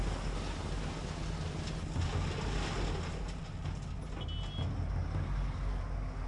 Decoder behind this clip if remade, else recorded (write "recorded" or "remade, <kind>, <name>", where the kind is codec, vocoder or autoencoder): recorded